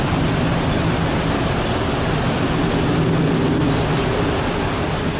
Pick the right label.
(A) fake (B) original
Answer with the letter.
B